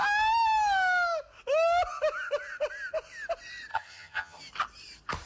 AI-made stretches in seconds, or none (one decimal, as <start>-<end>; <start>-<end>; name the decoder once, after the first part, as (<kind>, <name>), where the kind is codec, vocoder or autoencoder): 3.7-4.4 (vocoder, HiFi-GAN)

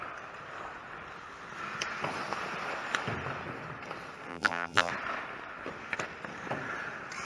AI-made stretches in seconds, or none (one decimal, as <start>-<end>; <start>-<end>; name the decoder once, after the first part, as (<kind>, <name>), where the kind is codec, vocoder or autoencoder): 4.3-4.9 (vocoder, BigVGAN v2)

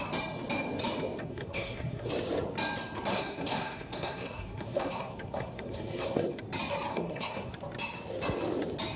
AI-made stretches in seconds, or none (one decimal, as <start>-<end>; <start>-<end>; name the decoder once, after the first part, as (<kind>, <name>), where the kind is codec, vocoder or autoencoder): 1.2-2.1 (codec, SNAC); 3.1-6.4; 6.9-7.5

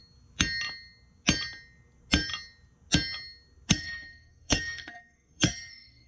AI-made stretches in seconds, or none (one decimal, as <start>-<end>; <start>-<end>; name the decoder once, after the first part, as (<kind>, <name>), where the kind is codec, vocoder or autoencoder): 3.7-6.1 (codec, SNAC)